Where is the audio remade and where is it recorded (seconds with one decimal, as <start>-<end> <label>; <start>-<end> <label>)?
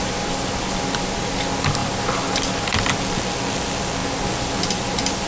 0.0-1.8 recorded; 1.8-3.0 remade; 3.0-5.3 recorded